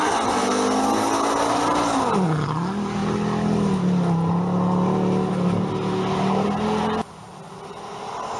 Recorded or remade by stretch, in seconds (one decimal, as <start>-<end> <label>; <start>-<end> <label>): 0.0-8.4 recorded